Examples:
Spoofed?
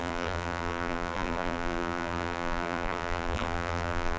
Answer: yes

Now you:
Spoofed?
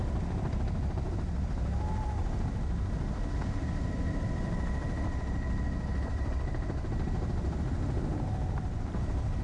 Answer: yes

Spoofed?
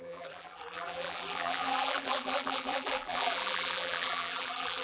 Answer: yes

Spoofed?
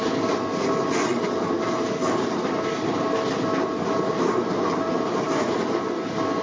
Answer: no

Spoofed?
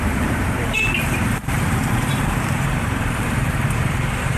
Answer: yes